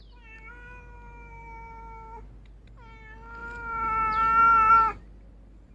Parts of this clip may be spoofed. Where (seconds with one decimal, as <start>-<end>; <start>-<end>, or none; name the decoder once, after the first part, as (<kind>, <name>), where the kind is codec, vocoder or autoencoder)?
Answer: none